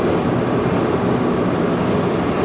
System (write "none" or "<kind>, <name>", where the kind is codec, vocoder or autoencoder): none